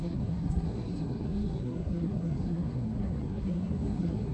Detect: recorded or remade remade